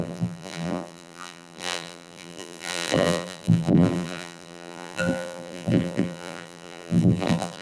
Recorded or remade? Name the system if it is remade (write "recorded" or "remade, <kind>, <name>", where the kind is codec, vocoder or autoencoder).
remade, vocoder, BigVGAN v2